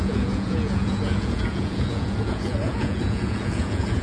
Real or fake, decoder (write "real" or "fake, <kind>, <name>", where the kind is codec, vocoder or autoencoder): fake, vocoder, Vocos